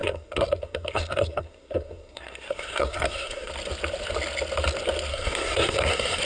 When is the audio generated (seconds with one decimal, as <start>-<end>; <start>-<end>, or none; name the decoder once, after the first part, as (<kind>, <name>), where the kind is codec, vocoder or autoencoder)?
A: 0.0-3.5 (codec, SNAC); 5.1-6.2